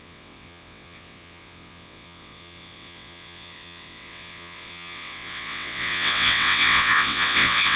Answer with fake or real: fake